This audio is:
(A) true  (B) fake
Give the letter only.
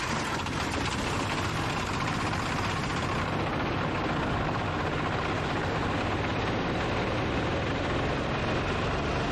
A